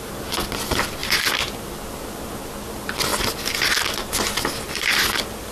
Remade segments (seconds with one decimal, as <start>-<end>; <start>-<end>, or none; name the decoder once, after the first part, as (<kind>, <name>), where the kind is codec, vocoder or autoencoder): none